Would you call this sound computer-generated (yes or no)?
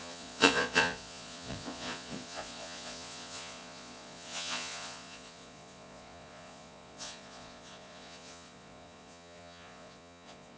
yes